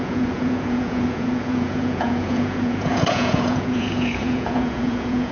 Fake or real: fake